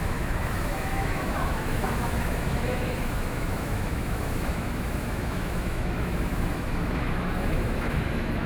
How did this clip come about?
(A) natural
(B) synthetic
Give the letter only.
B